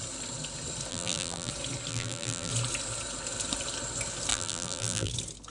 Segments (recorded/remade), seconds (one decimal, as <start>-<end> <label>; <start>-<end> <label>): 0.0-0.9 recorded; 0.9-1.5 remade; 1.5-1.9 recorded; 1.9-2.5 remade; 2.5-4.3 recorded; 4.3-5.1 remade; 5.1-5.5 recorded